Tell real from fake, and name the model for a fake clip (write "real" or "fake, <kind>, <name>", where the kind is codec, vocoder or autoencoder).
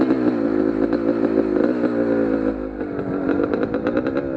real